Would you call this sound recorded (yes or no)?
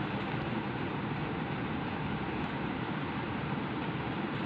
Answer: yes